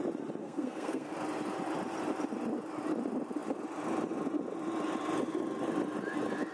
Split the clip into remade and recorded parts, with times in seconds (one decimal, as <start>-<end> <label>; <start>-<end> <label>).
0.0-0.4 recorded; 0.4-1.1 remade; 1.1-6.5 recorded